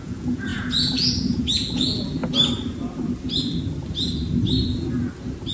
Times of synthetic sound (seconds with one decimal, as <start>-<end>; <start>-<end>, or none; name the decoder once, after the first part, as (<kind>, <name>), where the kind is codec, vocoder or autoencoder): 0.0-2.2 (vocoder, Vocos)